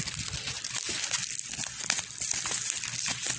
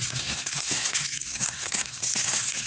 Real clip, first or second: first